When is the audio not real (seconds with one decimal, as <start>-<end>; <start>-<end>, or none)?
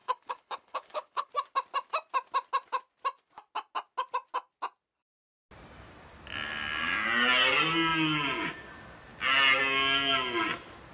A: 0.0-1.3